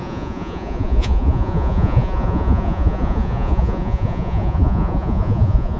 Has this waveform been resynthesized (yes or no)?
yes